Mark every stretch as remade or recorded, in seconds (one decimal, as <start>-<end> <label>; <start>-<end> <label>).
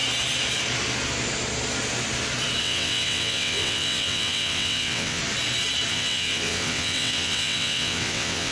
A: 0.0-2.6 recorded; 2.6-5.2 remade; 5.2-5.9 recorded; 5.9-8.5 remade